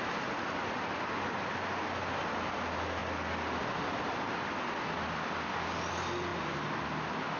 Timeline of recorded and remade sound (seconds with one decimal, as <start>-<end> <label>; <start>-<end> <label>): 0.0-7.4 recorded